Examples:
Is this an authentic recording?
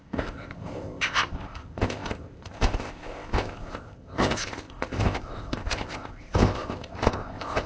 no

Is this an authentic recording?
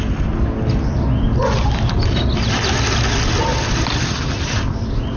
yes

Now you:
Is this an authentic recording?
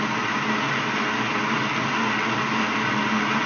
yes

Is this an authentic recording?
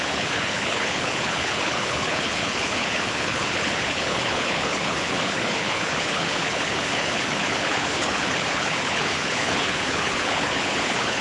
no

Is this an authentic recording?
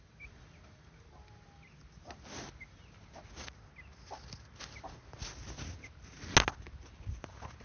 yes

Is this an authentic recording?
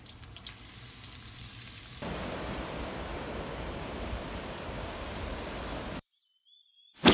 yes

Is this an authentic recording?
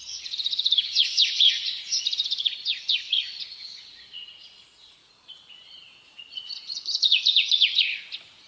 no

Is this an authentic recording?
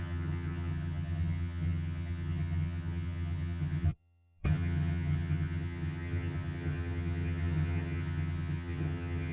no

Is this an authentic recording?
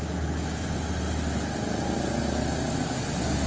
yes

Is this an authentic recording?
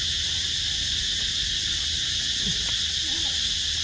yes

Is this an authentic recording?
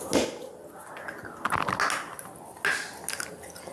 yes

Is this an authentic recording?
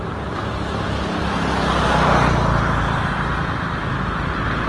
yes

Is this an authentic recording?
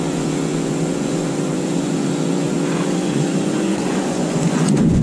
no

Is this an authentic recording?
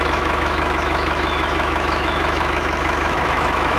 no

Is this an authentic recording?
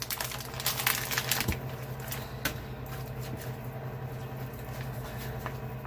yes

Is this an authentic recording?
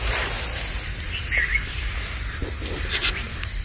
no